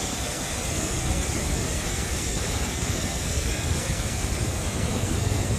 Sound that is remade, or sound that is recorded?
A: remade